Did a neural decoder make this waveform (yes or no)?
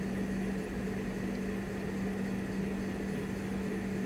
no